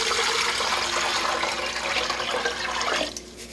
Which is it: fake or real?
real